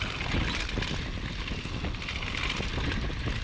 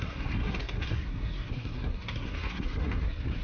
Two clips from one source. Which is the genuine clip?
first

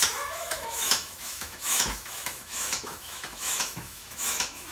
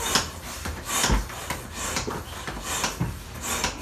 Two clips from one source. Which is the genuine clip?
second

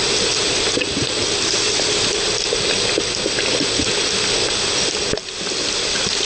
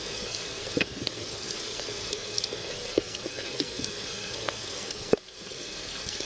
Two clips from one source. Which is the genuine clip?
first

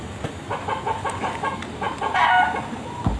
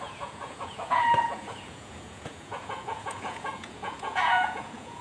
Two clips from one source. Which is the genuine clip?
first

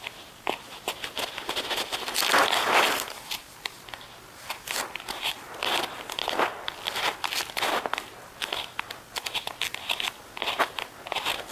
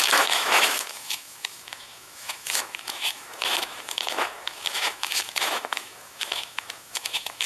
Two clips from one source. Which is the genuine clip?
first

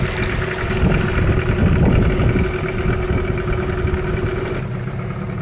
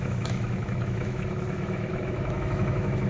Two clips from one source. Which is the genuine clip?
first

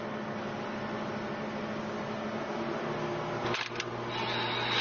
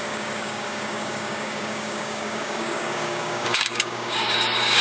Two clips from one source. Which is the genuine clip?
first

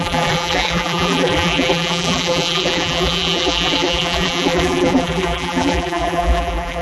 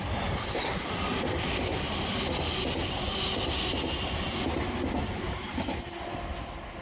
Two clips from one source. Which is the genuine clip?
second